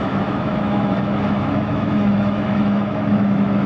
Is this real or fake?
fake